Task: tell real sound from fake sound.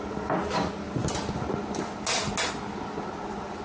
real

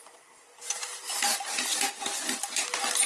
real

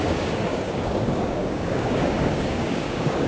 fake